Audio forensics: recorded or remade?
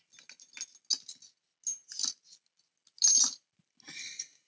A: recorded